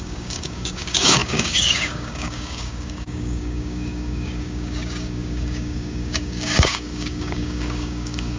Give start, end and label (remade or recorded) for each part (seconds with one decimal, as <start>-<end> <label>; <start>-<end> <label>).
0.0-8.4 remade